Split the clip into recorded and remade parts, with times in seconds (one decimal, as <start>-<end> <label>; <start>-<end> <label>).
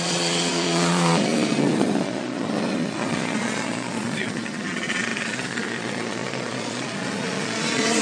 0.0-8.0 remade